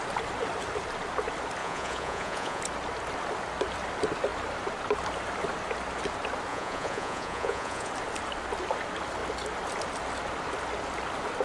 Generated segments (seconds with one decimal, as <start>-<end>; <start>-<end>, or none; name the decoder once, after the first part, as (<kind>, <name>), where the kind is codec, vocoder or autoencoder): 1.6-2.6 (vocoder, Vocos); 6.5-7.9